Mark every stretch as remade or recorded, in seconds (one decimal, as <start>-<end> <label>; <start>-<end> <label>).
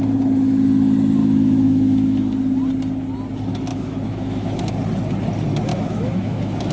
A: 0.0-1.2 recorded; 1.2-2.3 remade; 2.3-3.7 recorded; 3.7-4.6 remade; 4.6-5.7 recorded; 5.7-6.7 remade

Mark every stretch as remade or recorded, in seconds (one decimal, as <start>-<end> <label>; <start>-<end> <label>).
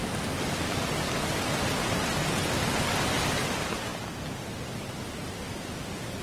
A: 0.0-6.2 recorded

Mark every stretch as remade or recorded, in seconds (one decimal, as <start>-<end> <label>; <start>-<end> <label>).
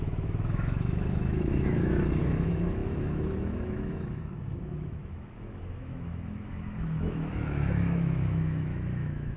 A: 0.0-9.4 remade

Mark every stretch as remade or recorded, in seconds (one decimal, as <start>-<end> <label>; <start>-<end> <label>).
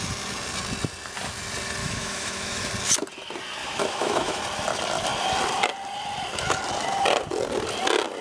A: 0.0-1.8 recorded; 1.8-2.7 remade; 2.7-3.6 recorded; 3.6-4.4 remade; 4.4-8.2 recorded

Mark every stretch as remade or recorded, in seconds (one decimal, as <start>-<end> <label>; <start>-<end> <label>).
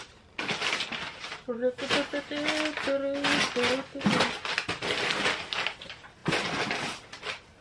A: 0.0-7.6 recorded